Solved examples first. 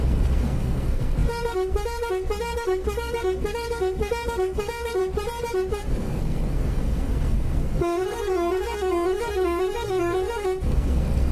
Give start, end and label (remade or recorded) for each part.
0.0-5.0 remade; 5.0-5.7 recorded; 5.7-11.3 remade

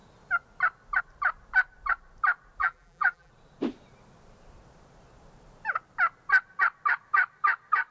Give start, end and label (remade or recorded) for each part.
0.0-2.6 recorded; 2.6-3.3 remade; 3.3-7.9 recorded

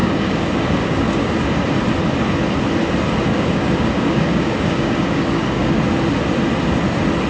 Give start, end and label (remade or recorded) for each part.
0.0-1.5 remade; 1.5-3.3 recorded; 3.3-5.8 remade; 5.8-7.3 recorded